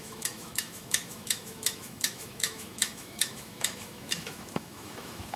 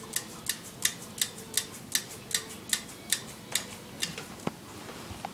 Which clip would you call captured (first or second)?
second